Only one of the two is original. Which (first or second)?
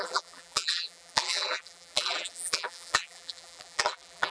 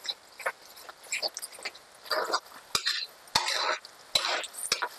second